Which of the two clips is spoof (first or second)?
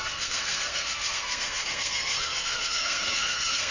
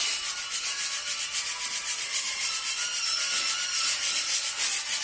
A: first